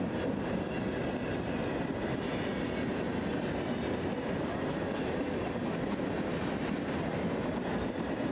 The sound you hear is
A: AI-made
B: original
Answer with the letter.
B